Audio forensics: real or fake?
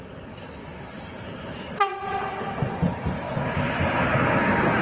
real